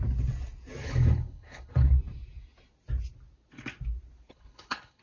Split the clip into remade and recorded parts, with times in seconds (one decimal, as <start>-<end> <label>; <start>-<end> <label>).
0.0-0.8 recorded; 0.8-1.9 remade; 1.9-4.3 recorded; 4.3-5.0 remade